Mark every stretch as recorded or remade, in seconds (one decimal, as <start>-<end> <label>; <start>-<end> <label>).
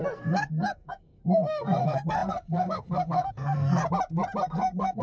0.0-3.8 remade; 3.8-4.4 recorded; 4.4-5.0 remade